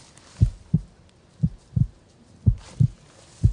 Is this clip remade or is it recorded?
recorded